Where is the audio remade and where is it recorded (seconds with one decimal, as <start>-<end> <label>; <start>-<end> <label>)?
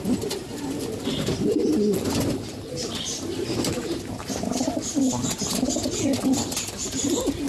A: 0.0-7.5 recorded